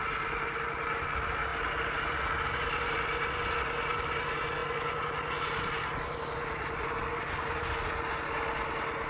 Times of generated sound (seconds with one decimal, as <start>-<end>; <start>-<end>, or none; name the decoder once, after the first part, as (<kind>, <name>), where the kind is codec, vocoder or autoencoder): none